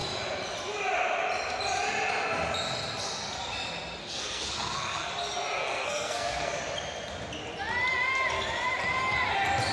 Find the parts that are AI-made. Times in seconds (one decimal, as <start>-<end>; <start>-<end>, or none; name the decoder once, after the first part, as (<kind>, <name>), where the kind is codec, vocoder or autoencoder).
4.0-5.1 (codec, SNAC); 5.6-6.6